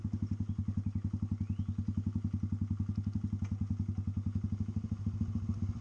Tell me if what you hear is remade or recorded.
recorded